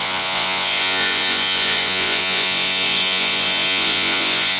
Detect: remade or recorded remade